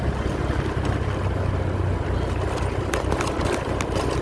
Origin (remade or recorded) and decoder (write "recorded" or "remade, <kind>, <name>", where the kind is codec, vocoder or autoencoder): recorded